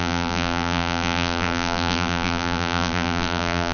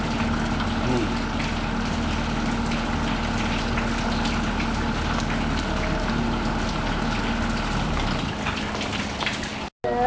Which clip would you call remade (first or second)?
first